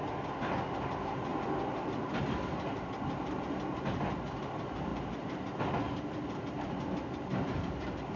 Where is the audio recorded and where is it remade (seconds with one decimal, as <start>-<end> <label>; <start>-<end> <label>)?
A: 0.0-8.2 recorded